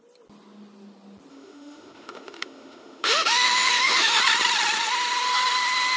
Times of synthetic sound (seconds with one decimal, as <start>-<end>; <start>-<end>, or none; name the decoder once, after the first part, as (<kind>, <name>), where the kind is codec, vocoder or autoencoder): 1.3-4.2 (autoencoder, DAC-VAE)